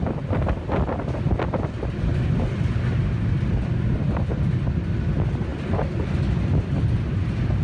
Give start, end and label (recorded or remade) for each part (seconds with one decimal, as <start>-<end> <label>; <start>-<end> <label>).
0.0-7.6 recorded